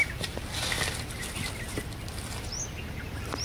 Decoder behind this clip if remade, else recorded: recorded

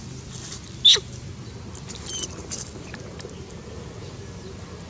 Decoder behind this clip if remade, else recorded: recorded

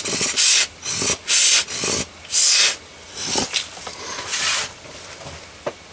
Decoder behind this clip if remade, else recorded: recorded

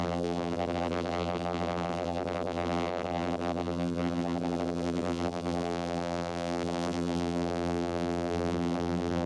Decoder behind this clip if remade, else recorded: remade, vocoder, BigVGAN v2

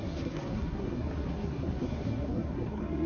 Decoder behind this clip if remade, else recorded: remade, codec, SNAC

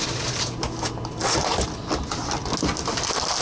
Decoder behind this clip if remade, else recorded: recorded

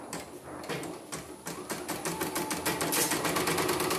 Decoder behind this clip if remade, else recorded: recorded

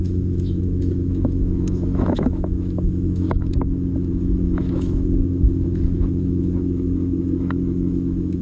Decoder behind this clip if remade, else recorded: remade, autoencoder, DAC-VAE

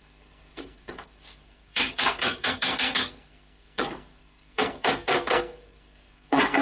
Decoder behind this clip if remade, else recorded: remade, codec, SNAC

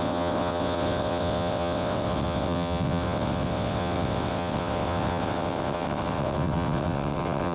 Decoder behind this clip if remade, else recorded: remade, vocoder, WaveNeXt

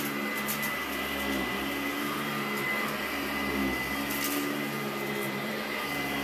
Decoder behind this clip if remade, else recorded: recorded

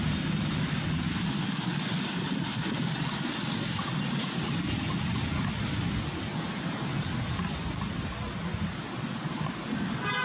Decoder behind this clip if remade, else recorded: recorded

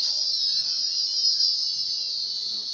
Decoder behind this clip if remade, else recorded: recorded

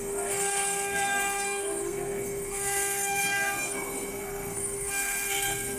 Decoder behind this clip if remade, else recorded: remade, codec, SNAC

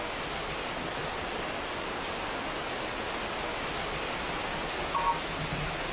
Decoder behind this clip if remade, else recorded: recorded